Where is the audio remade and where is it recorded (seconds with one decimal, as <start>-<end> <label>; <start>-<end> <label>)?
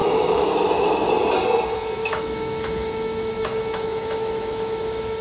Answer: 0.0-1.1 remade; 1.1-2.0 recorded; 2.0-5.2 remade